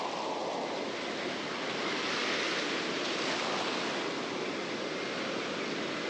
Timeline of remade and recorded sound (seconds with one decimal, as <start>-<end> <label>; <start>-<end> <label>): 0.0-6.1 recorded